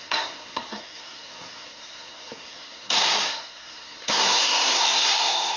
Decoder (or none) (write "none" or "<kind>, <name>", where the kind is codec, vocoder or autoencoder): codec, SNAC